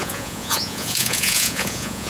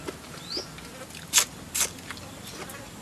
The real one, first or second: second